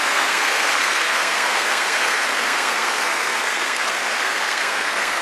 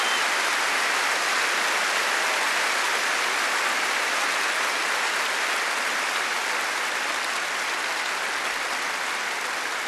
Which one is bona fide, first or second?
second